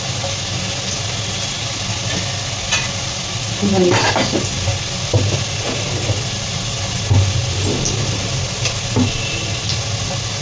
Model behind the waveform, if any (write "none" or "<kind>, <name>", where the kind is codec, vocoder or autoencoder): none